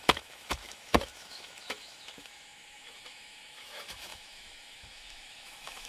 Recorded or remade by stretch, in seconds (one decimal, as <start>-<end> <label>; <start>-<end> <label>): 0.0-5.9 remade

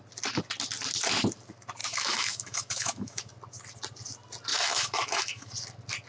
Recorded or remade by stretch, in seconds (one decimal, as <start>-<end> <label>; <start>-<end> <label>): 0.0-1.8 recorded; 1.8-3.3 remade; 3.3-4.5 recorded; 4.5-5.5 remade; 5.5-6.1 recorded

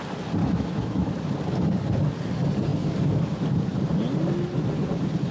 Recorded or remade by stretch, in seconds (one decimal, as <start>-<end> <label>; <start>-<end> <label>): 0.0-0.4 recorded; 0.4-1.2 remade; 1.2-5.3 recorded

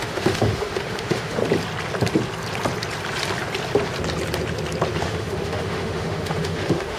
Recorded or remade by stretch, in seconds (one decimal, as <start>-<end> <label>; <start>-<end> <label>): 0.0-1.4 remade; 1.4-5.0 recorded; 5.0-7.0 remade

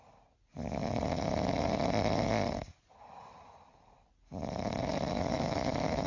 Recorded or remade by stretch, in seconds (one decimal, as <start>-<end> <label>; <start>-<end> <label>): 0.0-5.1 recorded; 5.1-6.1 remade

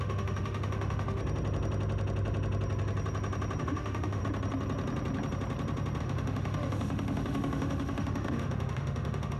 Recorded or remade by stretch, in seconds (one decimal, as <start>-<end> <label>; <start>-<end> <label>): 0.0-1.2 remade; 1.2-3.6 recorded; 3.6-4.2 remade; 4.2-6.0 recorded; 6.0-9.4 remade